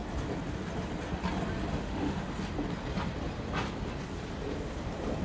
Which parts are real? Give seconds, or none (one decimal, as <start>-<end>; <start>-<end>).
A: 0.0-1.7; 2.3-5.2